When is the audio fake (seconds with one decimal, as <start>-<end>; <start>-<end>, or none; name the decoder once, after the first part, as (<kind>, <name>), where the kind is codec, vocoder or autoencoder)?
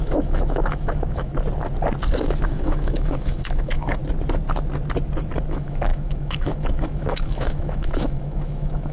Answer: 0.0-1.3 (autoencoder, DAC-VAE); 2.4-4.0; 5.5-8.9